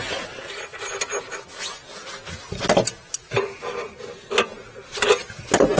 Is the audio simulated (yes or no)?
no